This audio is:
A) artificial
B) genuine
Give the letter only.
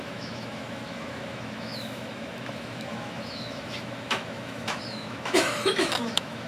A